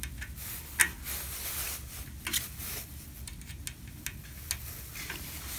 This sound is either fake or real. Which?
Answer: real